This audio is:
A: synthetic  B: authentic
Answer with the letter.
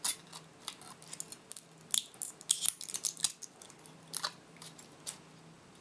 B